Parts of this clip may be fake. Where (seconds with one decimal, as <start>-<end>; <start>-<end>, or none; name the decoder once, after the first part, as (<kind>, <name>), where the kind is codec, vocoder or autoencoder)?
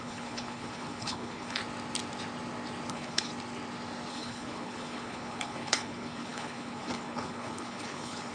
0.0-1.6 (codec, HILCodec); 2.9-3.3; 4.1-8.3